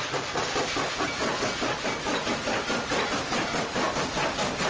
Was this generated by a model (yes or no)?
no